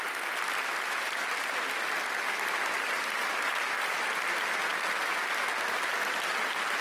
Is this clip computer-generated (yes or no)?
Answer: no